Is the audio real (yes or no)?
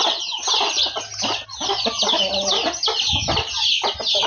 yes